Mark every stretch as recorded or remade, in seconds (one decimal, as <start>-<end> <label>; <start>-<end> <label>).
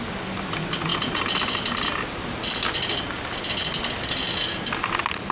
0.0-5.3 recorded